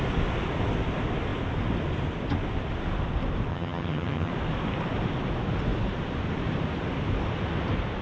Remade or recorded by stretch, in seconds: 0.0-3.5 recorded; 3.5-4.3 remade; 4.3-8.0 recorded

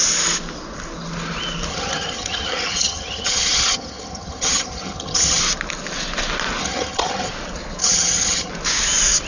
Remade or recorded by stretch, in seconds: 0.0-1.7 recorded; 1.7-5.4 remade; 5.4-6.6 recorded; 6.6-7.3 remade; 7.3-7.8 recorded; 7.8-8.5 remade; 8.5-9.3 recorded

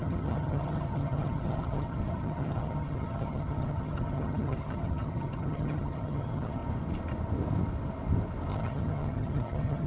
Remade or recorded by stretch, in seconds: 0.0-6.6 remade; 6.6-8.5 recorded; 8.5-9.9 remade

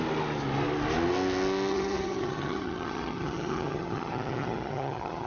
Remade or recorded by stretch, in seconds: 0.0-1.7 recorded; 1.7-5.3 remade